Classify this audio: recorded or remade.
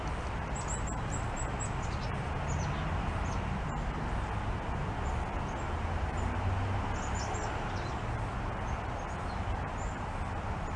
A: recorded